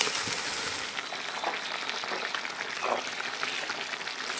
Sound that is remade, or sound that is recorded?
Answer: recorded